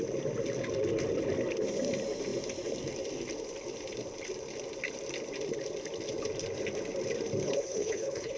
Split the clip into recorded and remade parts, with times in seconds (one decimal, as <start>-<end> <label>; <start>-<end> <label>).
0.0-7.4 recorded; 7.4-8.4 remade